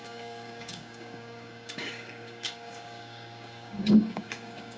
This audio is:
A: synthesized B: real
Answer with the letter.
A